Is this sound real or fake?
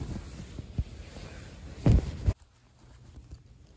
real